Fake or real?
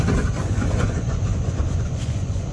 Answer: fake